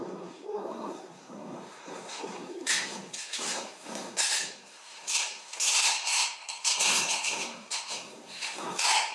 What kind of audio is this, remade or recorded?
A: remade